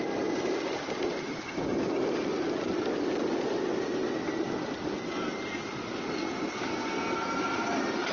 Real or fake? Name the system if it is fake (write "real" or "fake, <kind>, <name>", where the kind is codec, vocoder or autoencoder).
real